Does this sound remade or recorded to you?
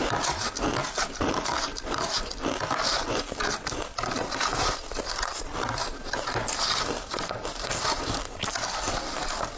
recorded